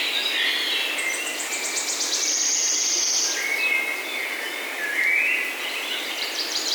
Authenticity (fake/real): real